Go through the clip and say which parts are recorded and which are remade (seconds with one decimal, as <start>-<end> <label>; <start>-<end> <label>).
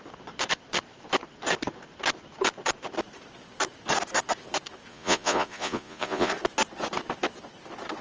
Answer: 0.0-4.9 recorded; 4.9-6.3 remade; 6.3-8.0 recorded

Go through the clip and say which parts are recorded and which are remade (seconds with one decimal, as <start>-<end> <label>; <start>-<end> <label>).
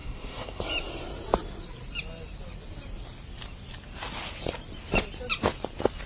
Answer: 0.0-0.6 remade; 0.6-6.1 recorded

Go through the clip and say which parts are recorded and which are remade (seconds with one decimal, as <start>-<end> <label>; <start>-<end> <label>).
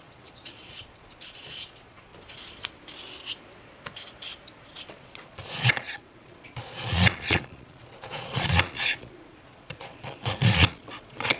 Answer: 0.0-2.1 remade; 2.1-4.9 recorded; 4.9-11.4 remade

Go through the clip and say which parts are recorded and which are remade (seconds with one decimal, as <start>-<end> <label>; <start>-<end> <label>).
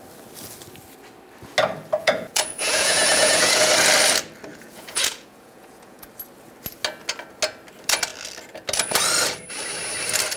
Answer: 0.0-2.0 recorded; 2.0-3.7 remade; 3.7-4.5 recorded; 4.5-6.1 remade; 6.1-10.4 recorded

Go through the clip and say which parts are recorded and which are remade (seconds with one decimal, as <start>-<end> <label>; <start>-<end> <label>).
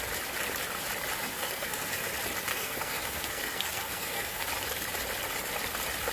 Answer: 0.0-1.2 recorded; 1.2-2.1 remade; 2.1-2.5 recorded; 2.5-4.5 remade; 4.5-6.1 recorded